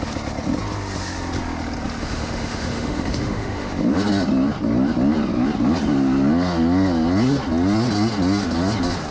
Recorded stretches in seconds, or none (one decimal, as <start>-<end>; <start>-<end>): 0.0-2.0; 3.7-9.1